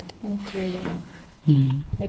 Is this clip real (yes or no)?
no